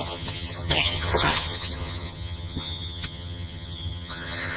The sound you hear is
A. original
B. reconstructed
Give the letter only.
B